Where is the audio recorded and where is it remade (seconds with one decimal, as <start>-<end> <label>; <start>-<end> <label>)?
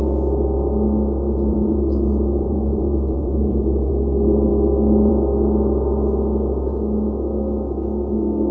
0.0-1.5 recorded; 1.5-3.9 remade; 3.9-8.5 recorded